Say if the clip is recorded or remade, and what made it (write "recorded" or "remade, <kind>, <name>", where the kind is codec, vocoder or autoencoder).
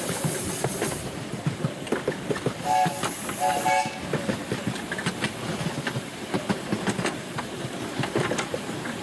recorded